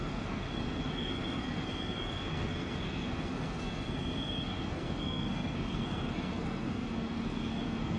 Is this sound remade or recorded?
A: remade